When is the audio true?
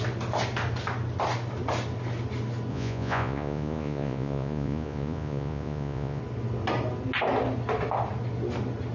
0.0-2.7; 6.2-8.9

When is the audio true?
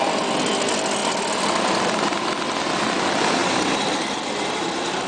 0.0-3.4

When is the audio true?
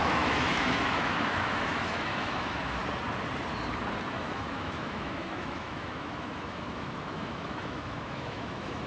2.8-4.1